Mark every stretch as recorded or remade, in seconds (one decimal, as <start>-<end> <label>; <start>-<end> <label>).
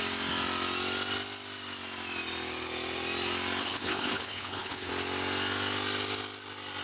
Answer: 0.0-3.6 recorded; 3.6-4.9 remade; 4.9-6.8 recorded